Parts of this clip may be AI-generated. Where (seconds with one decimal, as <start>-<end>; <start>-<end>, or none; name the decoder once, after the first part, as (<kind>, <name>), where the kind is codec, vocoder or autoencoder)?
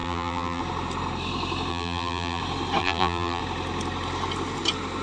0.0-0.6 (vocoder, BigVGAN v2); 1.7-2.4; 2.8-3.4